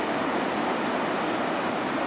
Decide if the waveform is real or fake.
real